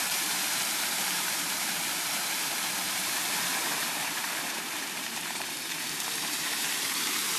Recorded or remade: remade